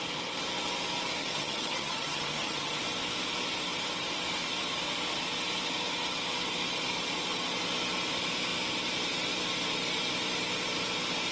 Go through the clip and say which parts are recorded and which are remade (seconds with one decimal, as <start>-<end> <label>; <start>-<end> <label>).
0.0-1.2 recorded; 1.2-2.8 remade; 2.8-11.3 recorded